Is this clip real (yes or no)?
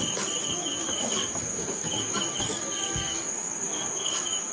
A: no